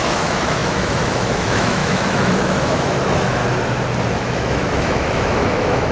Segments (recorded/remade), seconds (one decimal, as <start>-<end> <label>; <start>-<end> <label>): 0.0-3.4 remade; 3.4-4.1 recorded; 4.1-5.9 remade